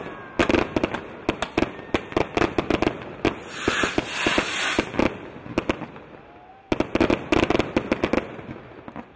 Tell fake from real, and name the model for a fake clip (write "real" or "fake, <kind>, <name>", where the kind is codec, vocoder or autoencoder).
real